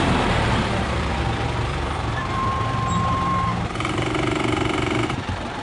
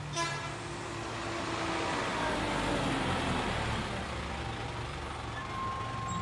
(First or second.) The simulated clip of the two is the first